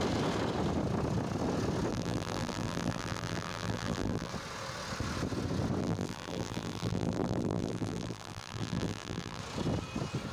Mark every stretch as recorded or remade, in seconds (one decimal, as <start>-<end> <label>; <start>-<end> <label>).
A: 0.0-1.9 recorded; 1.9-4.3 remade; 4.3-5.8 recorded; 5.8-9.4 remade; 9.4-10.3 recorded